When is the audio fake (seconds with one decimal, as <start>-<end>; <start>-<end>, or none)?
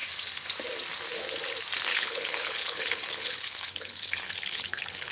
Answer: 1.9-5.1